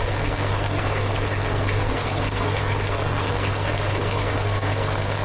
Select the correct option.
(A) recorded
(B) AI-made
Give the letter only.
B